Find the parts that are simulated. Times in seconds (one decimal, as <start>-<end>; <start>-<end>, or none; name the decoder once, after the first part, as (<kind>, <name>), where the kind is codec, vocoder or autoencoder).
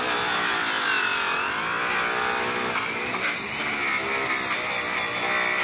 none